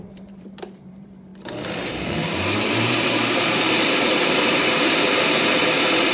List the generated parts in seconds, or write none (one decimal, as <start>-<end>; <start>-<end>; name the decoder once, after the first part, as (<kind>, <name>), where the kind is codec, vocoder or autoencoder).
0.0-1.3 (vocoder, BigVGAN v2); 1.9-6.1